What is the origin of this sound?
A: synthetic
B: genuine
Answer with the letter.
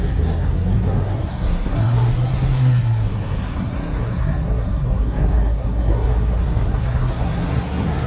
A